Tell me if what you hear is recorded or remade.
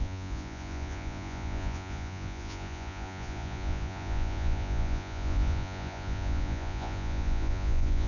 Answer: remade